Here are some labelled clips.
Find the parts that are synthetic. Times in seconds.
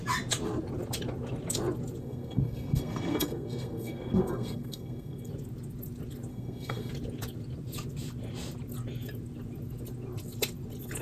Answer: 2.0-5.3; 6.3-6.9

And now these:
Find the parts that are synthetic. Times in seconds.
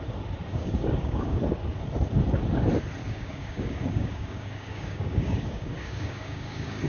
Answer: 0.5-1.4; 3.0-6.9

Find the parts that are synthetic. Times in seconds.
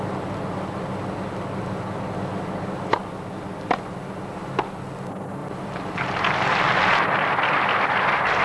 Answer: 5.4-6.0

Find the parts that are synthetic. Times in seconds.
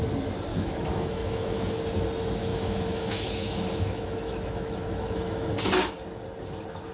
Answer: 0.5-1.8; 2.5-5.5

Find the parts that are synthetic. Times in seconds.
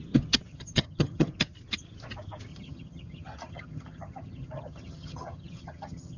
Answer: 0.5-1.3; 2.5-6.2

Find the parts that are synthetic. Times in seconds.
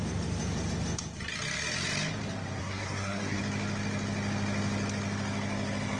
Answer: 2.6-3.4